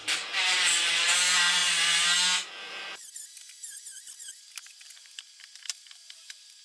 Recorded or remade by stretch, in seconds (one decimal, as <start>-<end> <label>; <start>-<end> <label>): 0.0-6.6 recorded